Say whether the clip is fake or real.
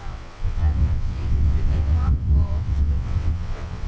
fake